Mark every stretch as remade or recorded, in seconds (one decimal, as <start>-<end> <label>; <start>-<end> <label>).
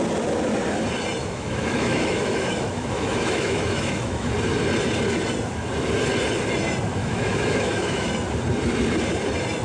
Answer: 0.0-1.2 recorded; 1.2-4.3 remade; 4.3-7.0 recorded; 7.0-8.1 remade; 8.1-9.6 recorded